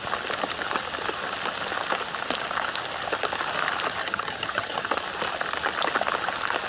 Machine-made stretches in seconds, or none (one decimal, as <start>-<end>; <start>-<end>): 4.0-4.8